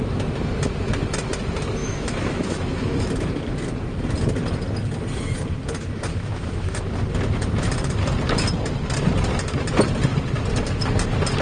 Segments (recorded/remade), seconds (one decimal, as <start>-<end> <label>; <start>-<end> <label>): 0.0-1.8 recorded; 1.8-3.1 remade; 3.1-6.1 recorded; 6.1-6.8 remade; 6.8-11.4 recorded